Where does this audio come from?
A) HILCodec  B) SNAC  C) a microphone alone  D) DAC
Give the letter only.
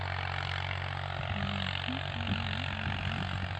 C